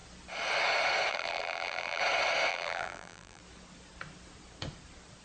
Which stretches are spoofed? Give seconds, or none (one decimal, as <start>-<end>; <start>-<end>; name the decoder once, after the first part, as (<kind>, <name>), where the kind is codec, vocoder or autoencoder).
1.1-2.0 (vocoder, BigVGAN v2); 2.5-3.4